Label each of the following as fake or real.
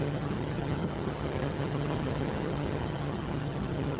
fake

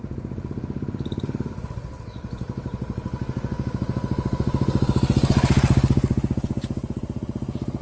real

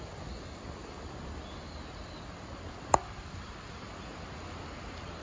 real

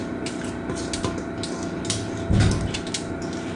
real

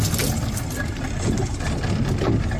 real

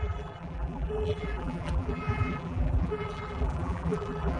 fake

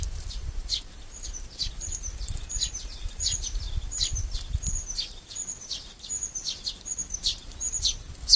fake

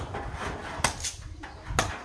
real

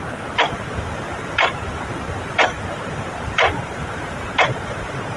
fake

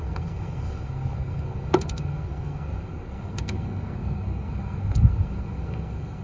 fake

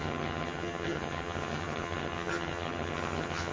fake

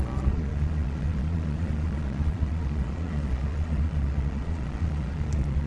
fake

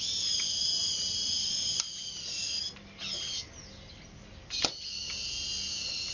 real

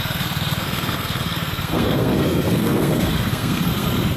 fake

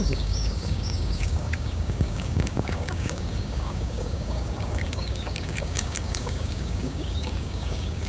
fake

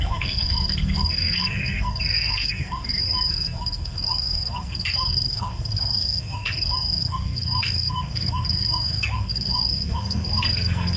fake